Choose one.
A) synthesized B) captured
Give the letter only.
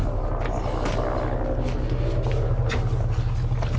B